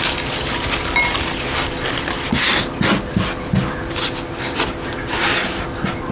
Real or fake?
real